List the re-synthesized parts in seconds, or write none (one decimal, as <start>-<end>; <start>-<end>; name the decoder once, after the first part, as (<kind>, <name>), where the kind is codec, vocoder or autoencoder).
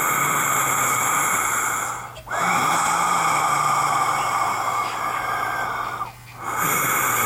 4.5-5.0 (codec, DAC)